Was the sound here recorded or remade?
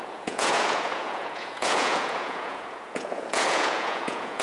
remade